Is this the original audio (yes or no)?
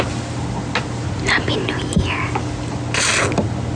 yes